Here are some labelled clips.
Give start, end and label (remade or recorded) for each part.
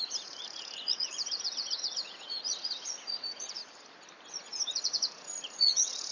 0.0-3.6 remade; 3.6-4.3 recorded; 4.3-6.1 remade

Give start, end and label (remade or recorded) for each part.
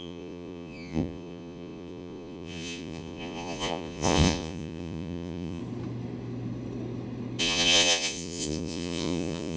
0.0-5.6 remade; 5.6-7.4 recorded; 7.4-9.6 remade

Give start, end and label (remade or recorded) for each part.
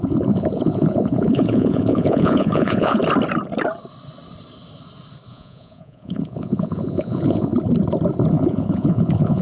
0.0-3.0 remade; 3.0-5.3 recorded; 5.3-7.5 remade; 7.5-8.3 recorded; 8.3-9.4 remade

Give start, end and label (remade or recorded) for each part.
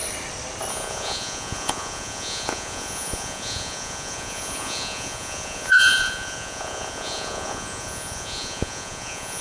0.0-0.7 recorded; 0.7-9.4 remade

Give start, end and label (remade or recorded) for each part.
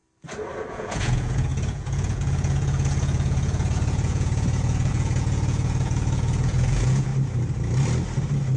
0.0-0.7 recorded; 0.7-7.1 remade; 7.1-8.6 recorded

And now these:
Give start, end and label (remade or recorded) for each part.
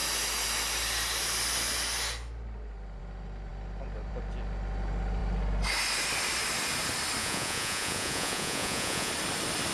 0.0-7.2 recorded; 7.2-9.1 remade; 9.1-9.7 recorded